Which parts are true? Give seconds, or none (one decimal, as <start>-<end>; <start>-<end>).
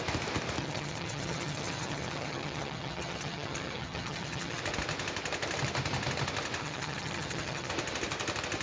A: 0.0-0.6; 4.6-6.6; 7.7-8.6